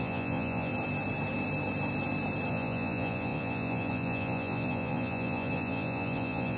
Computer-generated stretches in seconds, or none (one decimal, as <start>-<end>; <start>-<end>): 0.0-0.7; 2.5-6.6